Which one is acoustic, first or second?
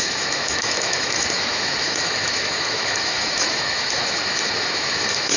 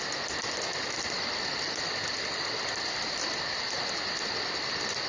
second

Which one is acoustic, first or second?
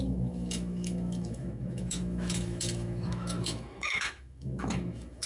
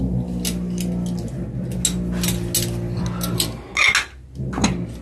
second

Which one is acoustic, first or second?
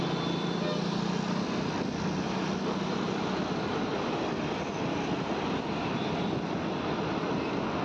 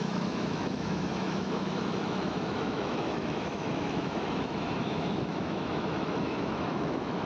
first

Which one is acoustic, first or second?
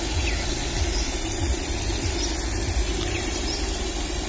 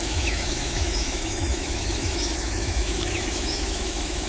first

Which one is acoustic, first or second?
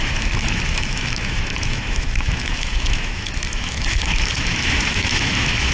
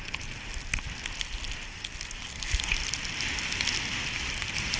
second